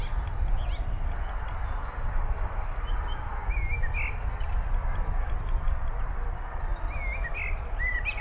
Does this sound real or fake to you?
real